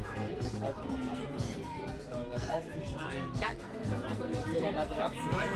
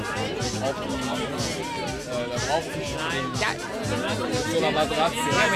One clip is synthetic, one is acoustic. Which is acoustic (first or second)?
second